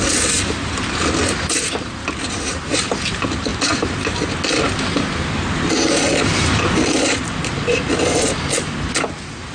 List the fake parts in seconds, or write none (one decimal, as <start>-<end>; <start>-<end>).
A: none